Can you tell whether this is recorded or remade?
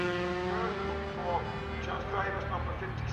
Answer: recorded